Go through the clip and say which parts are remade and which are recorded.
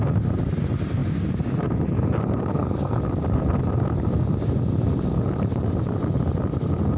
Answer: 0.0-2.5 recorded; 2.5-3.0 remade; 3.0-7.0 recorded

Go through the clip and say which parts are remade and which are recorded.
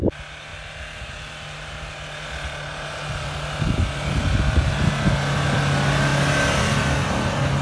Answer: 0.0-7.6 recorded